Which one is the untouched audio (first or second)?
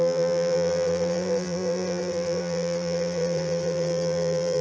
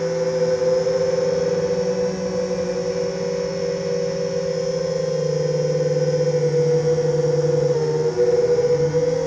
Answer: second